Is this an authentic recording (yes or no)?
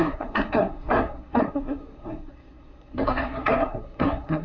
no